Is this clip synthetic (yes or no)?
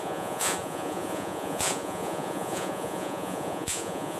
yes